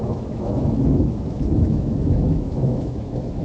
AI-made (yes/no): yes